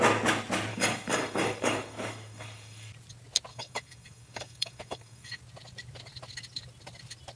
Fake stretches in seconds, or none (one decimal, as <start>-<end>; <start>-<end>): 0.7-2.9; 3.5-5.4